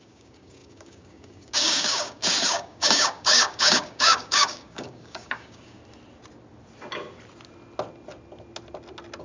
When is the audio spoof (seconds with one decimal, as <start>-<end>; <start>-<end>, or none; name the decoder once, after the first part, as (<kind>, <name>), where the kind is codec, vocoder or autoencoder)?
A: 0.0-5.8 (codec, DAC)